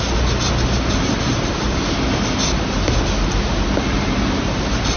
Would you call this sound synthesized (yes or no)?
no